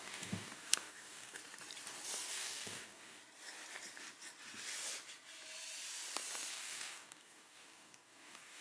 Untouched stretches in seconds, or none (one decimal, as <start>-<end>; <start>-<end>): 1.4-2.3; 3.2-6.5